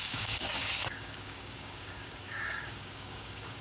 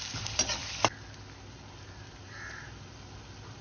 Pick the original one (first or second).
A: second